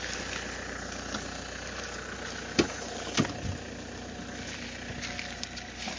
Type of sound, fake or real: real